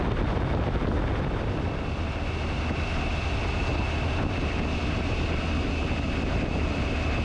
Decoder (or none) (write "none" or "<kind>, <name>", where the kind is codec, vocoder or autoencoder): none